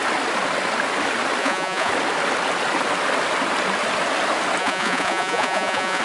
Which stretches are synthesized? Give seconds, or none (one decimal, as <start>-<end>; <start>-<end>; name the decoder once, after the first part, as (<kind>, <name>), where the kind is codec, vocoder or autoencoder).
1.4-1.9 (vocoder, Vocos); 4.6-6.0